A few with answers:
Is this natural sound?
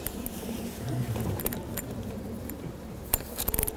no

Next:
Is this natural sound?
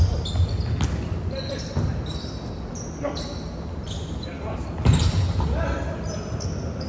yes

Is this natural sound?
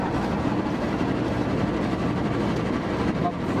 yes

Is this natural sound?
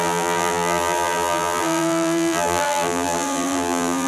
no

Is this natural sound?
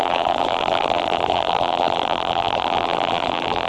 no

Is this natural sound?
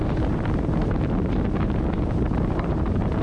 no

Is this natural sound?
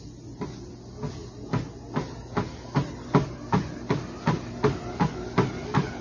yes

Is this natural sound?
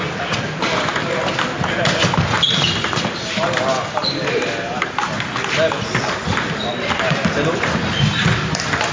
yes